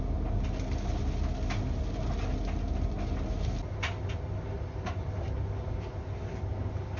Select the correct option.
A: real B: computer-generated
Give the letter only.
A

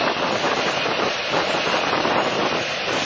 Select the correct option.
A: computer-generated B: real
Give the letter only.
A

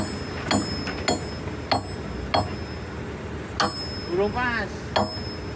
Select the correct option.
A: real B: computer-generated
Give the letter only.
A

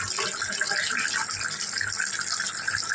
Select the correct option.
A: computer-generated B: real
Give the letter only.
B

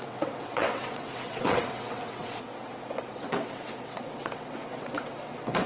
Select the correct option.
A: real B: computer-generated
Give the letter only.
B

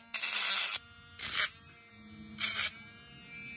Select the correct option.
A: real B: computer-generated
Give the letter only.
A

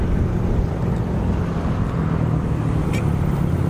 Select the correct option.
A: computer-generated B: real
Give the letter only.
B